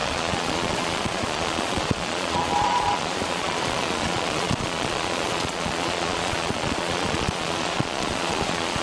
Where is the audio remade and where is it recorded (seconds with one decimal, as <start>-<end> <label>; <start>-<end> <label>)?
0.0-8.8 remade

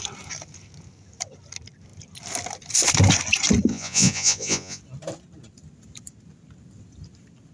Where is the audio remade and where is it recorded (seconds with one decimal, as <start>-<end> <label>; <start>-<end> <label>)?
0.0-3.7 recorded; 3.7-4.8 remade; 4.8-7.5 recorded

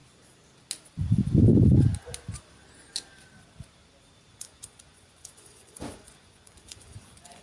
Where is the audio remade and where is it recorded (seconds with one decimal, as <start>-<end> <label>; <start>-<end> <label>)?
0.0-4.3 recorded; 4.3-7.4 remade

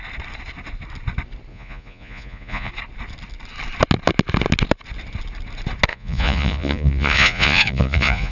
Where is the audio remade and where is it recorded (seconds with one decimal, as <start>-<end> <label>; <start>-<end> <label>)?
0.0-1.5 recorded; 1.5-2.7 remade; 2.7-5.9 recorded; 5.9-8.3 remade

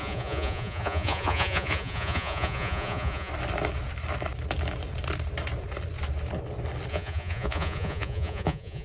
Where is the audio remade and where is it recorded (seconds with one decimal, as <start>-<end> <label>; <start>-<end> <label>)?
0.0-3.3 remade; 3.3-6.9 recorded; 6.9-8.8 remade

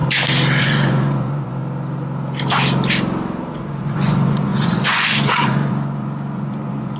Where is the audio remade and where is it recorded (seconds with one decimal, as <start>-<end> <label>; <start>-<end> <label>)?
0.0-0.6 recorded; 0.6-1.6 remade; 1.6-3.5 recorded; 3.5-7.0 remade

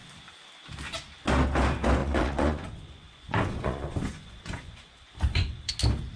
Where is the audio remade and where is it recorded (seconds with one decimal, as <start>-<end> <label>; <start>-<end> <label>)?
0.0-2.0 recorded; 2.0-5.7 remade; 5.7-6.2 recorded